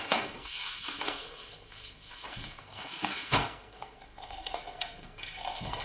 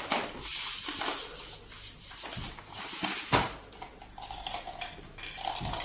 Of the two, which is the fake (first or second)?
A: first